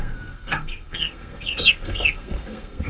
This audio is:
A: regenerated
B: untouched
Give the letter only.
A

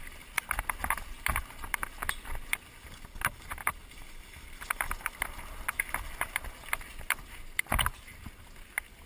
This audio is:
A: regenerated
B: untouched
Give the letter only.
B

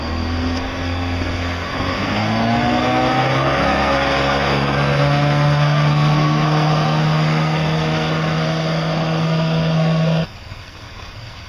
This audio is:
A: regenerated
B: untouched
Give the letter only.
A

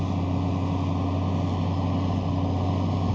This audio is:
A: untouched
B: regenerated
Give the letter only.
A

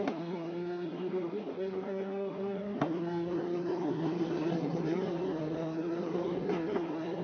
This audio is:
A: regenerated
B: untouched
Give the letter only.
A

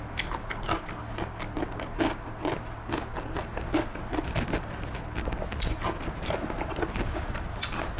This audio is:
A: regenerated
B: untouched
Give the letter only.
B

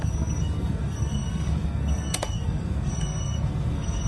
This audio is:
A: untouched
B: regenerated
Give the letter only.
B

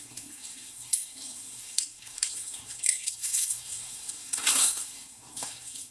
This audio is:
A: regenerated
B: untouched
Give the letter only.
A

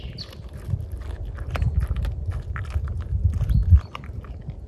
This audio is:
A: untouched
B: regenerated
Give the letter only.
A